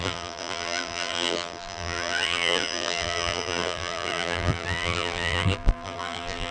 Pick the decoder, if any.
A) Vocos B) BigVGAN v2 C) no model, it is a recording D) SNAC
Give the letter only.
B